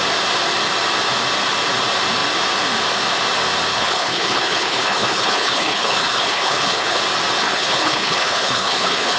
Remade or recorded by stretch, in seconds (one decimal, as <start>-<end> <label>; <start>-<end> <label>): 0.0-3.7 recorded; 3.7-7.0 remade; 7.0-7.4 recorded; 7.4-9.2 remade

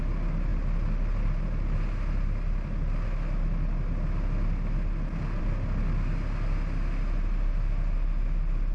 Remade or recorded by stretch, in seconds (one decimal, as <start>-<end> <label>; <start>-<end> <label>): 0.0-8.7 recorded

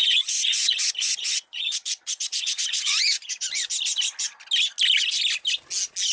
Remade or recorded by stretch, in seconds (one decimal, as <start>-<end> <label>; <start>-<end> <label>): 0.0-3.7 remade; 3.7-6.1 recorded

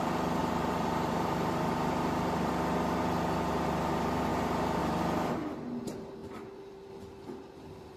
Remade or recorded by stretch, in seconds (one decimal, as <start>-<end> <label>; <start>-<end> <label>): 0.0-0.4 recorded; 0.4-2.5 remade; 2.5-4.3 recorded; 4.3-4.8 remade; 4.8-6.2 recorded; 6.2-6.9 remade; 6.9-8.0 recorded

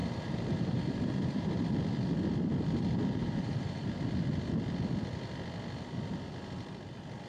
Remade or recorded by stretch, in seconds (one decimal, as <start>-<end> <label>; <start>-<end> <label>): 0.0-1.6 remade; 1.6-3.2 recorded; 3.2-4.0 remade; 4.0-7.3 recorded

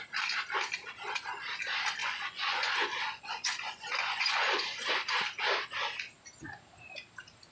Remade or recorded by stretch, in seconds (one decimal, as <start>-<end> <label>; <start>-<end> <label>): 0.0-2.0 recorded; 2.0-5.1 remade; 5.1-7.5 recorded